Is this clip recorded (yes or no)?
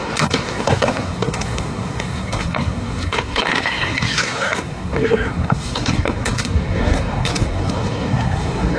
no